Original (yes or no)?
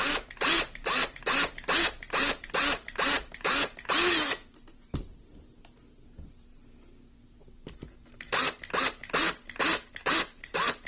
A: yes